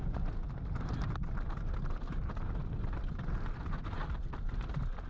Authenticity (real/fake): real